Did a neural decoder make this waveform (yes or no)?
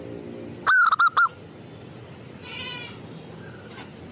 no